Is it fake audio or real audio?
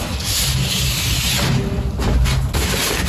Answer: real